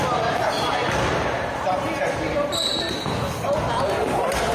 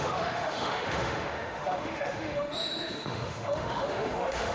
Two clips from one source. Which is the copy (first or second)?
second